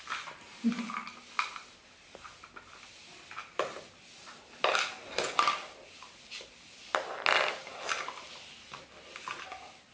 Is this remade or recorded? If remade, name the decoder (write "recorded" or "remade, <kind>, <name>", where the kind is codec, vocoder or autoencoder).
recorded